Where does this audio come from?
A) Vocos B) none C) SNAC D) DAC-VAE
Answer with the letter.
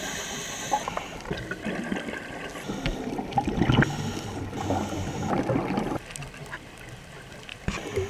B